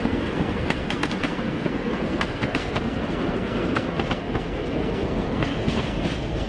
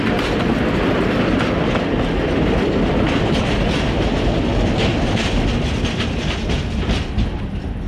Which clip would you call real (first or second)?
second